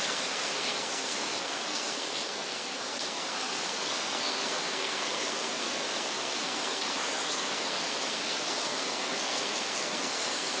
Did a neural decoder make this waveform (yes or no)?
yes